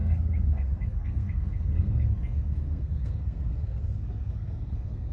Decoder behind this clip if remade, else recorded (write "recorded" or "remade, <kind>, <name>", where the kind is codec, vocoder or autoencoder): remade, codec, SNAC